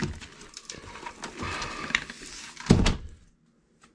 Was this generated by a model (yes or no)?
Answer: no